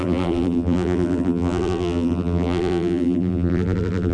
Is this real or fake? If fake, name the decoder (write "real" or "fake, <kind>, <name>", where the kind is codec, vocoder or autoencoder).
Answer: fake, vocoder, BigVGAN v2